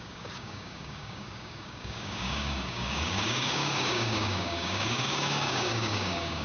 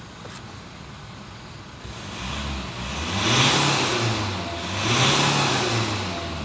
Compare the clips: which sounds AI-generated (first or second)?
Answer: first